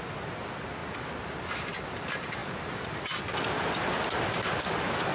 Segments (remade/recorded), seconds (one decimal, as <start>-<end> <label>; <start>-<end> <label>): 0.0-5.1 recorded